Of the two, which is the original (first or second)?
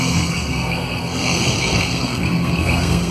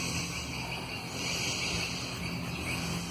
second